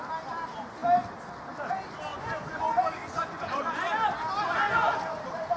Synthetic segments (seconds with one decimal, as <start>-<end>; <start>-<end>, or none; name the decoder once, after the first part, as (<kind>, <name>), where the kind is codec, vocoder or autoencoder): 2.1-2.6 (vocoder, Vocos); 3.0-3.6